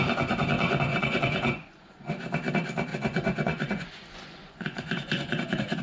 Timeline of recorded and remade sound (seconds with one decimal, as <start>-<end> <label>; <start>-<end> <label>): 0.0-0.9 recorded; 0.9-2.1 remade; 2.1-2.9 recorded; 2.9-5.8 remade